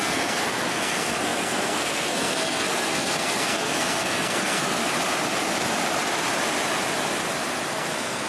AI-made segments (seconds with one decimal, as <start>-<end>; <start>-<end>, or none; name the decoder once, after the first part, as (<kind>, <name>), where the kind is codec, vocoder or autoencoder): 0.0-4.8 (codec, SNAC); 7.7-8.3